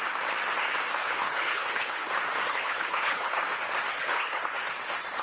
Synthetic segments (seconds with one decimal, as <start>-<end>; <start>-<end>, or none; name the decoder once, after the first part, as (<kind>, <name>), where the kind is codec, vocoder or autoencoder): 1.0-2.1 (codec, HILCodec); 2.5-3.4; 3.9-4.4